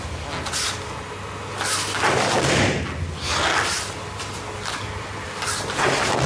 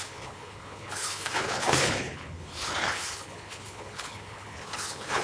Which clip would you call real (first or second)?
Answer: first